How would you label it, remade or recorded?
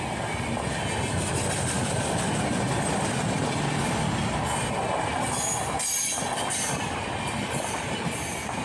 recorded